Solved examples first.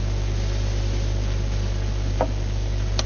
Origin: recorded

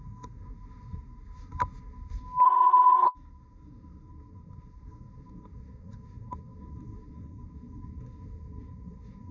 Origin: remade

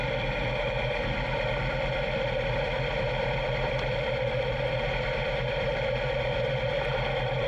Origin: recorded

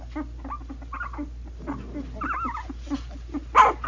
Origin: recorded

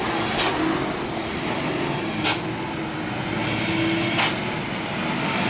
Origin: recorded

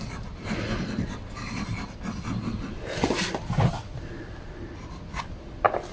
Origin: recorded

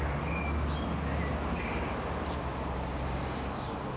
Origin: recorded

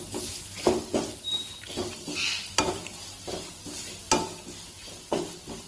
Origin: recorded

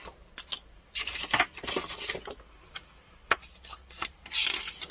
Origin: recorded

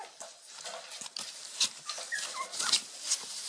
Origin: recorded